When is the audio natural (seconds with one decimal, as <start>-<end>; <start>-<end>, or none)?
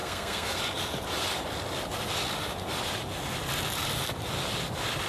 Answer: 0.6-5.1